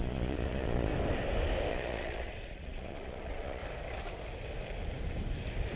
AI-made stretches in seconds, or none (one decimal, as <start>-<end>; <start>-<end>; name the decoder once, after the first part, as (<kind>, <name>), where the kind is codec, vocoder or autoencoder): 0.0-0.9 (vocoder, Vocos); 1.7-3.6